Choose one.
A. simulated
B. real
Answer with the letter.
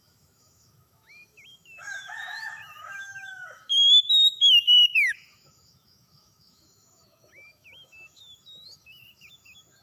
A